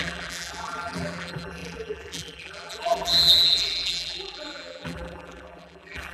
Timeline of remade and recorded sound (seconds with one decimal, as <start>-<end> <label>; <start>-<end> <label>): 0.0-6.1 remade

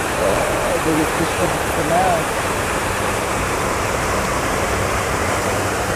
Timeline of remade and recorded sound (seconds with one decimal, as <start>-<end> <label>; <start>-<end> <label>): 0.0-6.0 remade

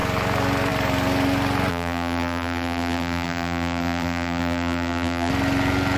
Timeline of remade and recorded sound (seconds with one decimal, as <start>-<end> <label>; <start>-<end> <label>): 0.0-1.7 recorded; 1.7-5.3 remade; 5.3-6.0 recorded

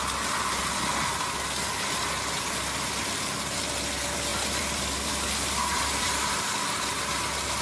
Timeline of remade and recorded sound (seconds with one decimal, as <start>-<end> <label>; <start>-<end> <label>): 0.0-4.3 recorded; 4.3-5.1 remade; 5.1-5.7 recorded; 5.7-6.3 remade; 6.3-7.6 recorded

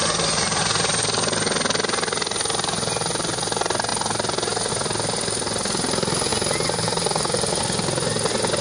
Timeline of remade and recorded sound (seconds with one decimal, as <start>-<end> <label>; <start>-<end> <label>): 0.0-1.0 remade; 1.0-6.3 recorded; 6.3-7.6 remade; 7.6-8.6 recorded

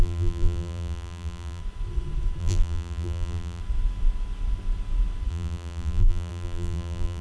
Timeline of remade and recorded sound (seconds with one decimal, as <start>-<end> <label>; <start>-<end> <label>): 0.0-1.6 remade; 1.6-2.4 recorded; 2.4-3.6 remade; 3.6-5.3 recorded; 5.3-7.2 remade

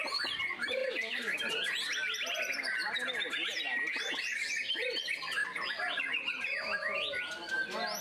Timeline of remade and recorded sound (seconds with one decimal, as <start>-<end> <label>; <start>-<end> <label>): 0.0-0.8 recorded; 0.8-1.5 remade; 1.5-5.4 recorded; 5.4-7.5 remade; 7.5-8.0 recorded

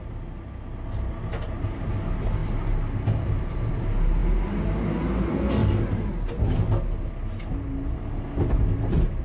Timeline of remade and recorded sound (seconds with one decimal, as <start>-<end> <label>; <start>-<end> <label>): 0.0-9.2 recorded